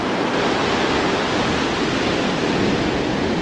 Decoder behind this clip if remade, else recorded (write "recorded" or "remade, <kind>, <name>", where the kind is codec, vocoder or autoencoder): recorded